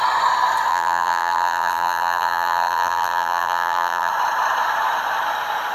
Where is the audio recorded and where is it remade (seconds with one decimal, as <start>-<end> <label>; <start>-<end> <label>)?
0.0-0.7 recorded; 0.7-4.1 remade; 4.1-5.7 recorded